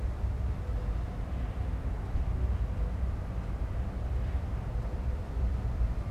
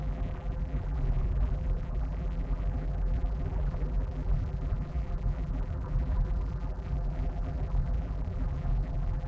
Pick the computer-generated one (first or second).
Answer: second